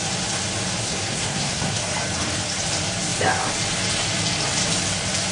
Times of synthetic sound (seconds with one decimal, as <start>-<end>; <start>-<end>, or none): 0.8-1.8